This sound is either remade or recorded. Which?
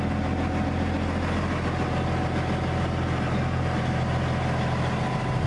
recorded